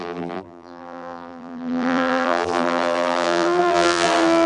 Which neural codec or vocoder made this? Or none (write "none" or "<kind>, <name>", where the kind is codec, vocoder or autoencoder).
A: vocoder, BigVGAN v2